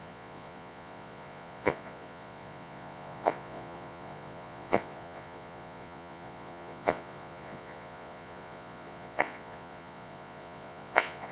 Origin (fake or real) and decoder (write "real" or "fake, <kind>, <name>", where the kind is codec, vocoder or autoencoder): fake, vocoder, Vocos